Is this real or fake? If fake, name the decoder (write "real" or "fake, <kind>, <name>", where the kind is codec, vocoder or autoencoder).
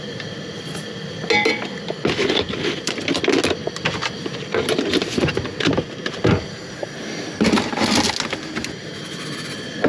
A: real